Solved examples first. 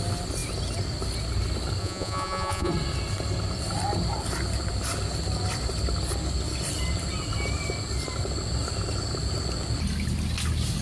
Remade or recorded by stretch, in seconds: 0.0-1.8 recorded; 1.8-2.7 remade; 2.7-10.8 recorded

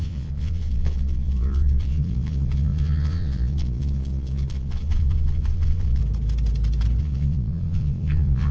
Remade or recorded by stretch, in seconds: 0.0-6.0 remade; 6.0-7.0 recorded; 7.0-8.5 remade

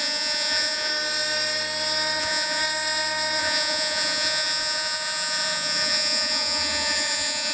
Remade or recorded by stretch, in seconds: 0.0-0.9 remade; 0.9-2.2 recorded; 2.2-2.6 remade; 2.6-3.4 recorded; 3.4-7.5 remade

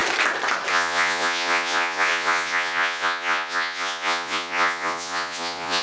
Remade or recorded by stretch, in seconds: 0.0-0.7 recorded; 0.7-5.8 remade

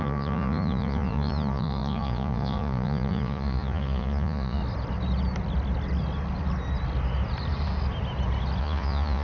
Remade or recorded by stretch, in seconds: 0.0-4.6 remade; 4.6-8.6 recorded; 8.6-9.2 remade

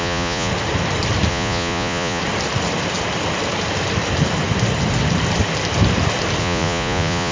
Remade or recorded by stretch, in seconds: 0.0-0.5 remade; 0.5-1.3 recorded; 1.3-2.2 remade; 2.2-6.4 recorded; 6.4-7.3 remade

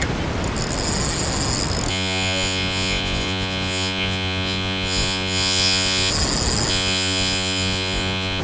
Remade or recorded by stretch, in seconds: 0.0-1.9 recorded; 1.9-6.1 remade; 6.1-6.7 recorded; 6.7-8.4 remade

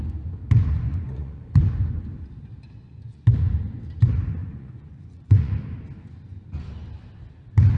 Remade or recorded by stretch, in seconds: 0.0-0.9 recorded; 0.9-1.6 remade; 1.6-4.4 recorded; 4.4-5.5 remade; 5.5-7.8 recorded